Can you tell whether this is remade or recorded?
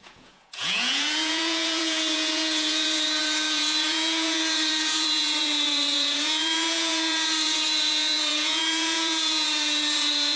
remade